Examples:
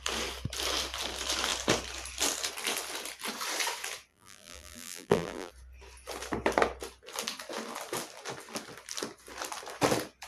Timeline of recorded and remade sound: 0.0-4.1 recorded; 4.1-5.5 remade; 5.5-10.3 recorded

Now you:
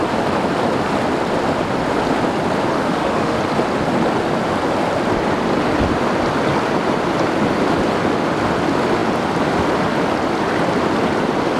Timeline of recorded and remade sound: 0.0-2.7 recorded; 2.7-3.4 remade; 3.4-11.6 recorded

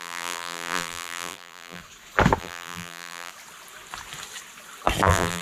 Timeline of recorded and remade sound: 0.0-1.8 remade; 1.8-2.4 recorded; 2.4-3.3 remade; 3.3-5.0 recorded; 5.0-5.4 remade